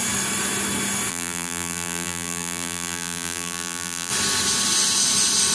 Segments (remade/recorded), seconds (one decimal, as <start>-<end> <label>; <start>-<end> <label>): 0.0-1.1 recorded; 1.1-4.1 remade; 4.1-5.5 recorded